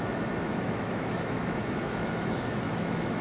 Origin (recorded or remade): remade